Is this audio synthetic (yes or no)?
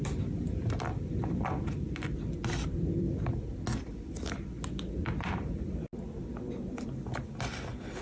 no